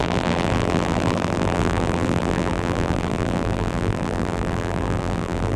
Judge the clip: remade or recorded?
remade